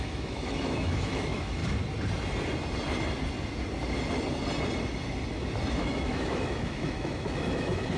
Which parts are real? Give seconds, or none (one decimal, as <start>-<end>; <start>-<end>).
1.6-5.7